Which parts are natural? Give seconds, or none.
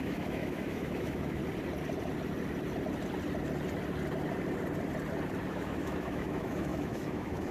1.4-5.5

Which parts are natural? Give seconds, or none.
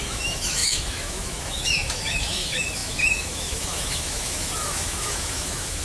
none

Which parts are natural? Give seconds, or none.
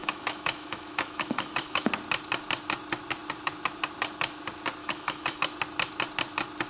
1.9-4.8; 5.4-6.7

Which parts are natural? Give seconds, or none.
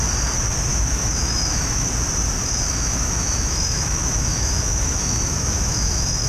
0.0-0.7; 1.9-2.4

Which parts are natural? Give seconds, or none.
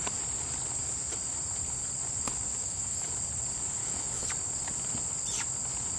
0.0-2.5; 3.1-3.8; 4.3-6.0